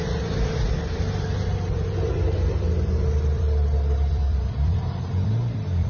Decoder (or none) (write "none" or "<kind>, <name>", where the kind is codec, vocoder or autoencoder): vocoder, BigVGAN v2